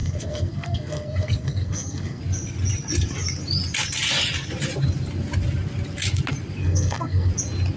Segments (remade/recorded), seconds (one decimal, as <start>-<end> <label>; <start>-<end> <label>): 0.0-2.2 remade; 2.2-6.6 recorded; 6.6-7.3 remade; 7.3-7.8 recorded